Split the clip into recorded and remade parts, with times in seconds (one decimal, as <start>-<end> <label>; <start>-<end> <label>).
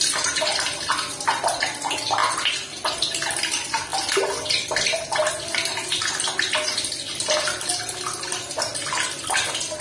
0.0-9.8 recorded